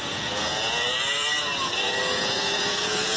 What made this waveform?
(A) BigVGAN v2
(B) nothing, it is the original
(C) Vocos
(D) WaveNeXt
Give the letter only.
C